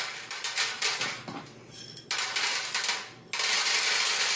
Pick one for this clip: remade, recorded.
recorded